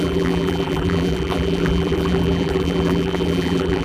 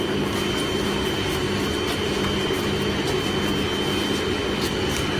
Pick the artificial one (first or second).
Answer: first